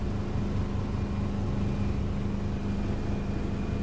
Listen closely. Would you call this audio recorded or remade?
recorded